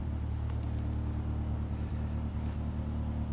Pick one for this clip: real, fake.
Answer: real